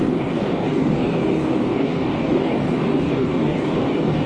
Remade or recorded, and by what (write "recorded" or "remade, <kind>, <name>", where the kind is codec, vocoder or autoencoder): remade, codec, DAC